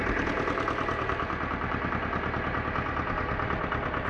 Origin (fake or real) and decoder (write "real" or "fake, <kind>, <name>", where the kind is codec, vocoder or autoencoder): real